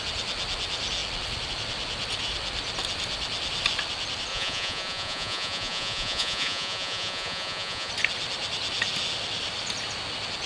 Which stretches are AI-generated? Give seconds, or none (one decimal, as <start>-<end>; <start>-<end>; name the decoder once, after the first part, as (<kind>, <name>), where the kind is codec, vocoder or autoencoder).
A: 4.3-7.9 (vocoder, Vocos)